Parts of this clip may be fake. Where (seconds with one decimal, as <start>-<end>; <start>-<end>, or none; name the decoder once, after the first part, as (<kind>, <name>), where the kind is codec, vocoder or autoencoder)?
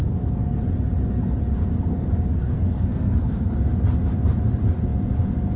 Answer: 0.0-0.6 (codec, SNAC); 1.9-3.5